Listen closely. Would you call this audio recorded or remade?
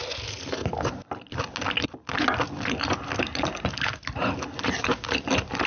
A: recorded